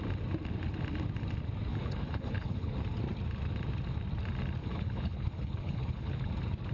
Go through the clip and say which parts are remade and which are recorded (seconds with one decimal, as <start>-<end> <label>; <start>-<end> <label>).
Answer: 0.0-1.7 recorded; 1.7-2.7 remade; 2.7-4.6 recorded; 4.6-6.3 remade; 6.3-6.7 recorded